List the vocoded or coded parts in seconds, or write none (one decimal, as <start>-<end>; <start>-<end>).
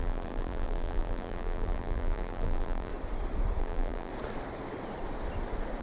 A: 0.0-2.9; 3.6-4.1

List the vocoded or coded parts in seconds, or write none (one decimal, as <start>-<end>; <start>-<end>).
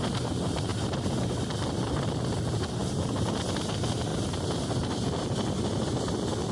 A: 0.7-1.2; 2.8-3.3; 4.1-4.9